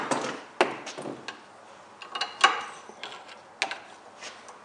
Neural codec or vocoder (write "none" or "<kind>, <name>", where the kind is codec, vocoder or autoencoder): none